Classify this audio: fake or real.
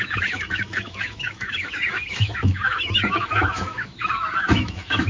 fake